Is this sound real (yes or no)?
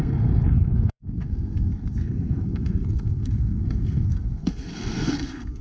no